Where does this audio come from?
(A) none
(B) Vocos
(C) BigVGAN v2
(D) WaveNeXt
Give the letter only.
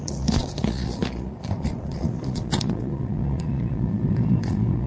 B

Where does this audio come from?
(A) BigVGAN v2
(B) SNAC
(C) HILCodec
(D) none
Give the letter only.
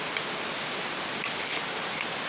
D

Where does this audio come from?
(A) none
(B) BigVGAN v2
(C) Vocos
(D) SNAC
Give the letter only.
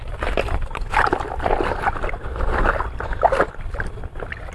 A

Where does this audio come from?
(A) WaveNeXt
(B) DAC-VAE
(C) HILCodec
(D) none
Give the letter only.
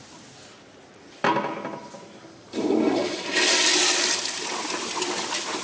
D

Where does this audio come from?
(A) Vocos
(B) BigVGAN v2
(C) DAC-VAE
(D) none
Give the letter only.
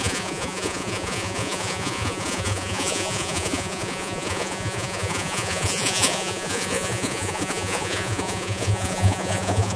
A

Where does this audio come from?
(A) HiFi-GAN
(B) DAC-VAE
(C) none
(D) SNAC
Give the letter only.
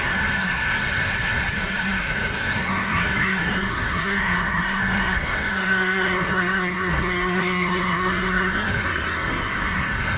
D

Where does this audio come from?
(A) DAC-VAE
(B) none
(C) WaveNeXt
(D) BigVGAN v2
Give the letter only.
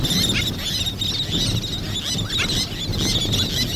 B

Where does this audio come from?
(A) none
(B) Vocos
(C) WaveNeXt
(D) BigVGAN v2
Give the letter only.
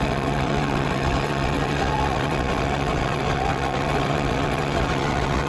C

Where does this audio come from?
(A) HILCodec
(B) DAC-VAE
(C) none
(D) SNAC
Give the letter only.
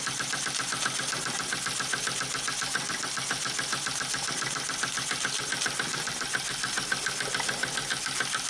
C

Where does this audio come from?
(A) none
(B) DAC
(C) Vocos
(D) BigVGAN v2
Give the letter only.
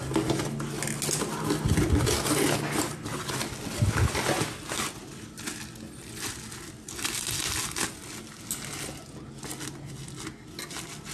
A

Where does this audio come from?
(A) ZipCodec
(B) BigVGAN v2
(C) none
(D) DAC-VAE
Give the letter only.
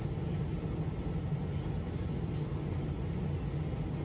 C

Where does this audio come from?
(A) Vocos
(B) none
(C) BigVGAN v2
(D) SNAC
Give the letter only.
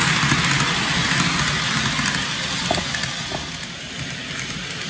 B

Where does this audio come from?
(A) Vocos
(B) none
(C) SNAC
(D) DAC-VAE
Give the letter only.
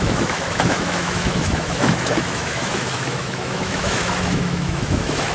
D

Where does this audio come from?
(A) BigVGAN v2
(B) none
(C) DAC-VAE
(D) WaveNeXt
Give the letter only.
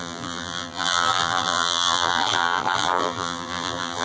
A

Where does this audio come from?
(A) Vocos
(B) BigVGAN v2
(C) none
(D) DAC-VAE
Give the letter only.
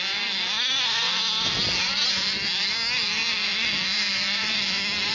C